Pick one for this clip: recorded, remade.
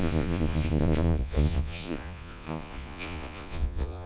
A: remade